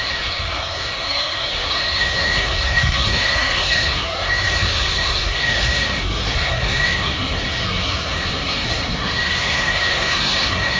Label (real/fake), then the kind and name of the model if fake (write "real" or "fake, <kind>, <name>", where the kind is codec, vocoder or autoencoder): fake, codec, SNAC